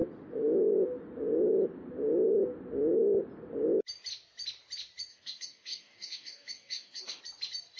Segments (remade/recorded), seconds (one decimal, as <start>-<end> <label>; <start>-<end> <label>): 0.0-5.1 recorded; 5.1-7.2 remade; 7.2-7.8 recorded